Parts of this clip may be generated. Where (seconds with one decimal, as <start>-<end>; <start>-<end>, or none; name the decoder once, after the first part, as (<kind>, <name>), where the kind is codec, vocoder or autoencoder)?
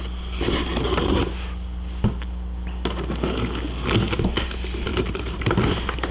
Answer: 0.7-1.2 (vocoder, BigVGAN v2); 4.9-5.5